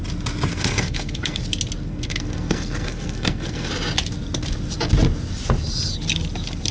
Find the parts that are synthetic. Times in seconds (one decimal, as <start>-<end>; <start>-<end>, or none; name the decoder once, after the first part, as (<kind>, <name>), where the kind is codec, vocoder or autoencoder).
0.5-1.4 (codec, SNAC); 1.9-3.7